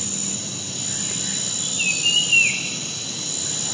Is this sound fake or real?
real